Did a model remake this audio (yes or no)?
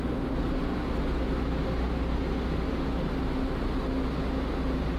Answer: no